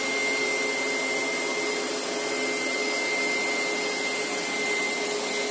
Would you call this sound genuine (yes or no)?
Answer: yes